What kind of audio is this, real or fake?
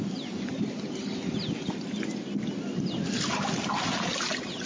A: real